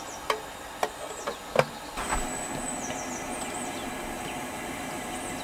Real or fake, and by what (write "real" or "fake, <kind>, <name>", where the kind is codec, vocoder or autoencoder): real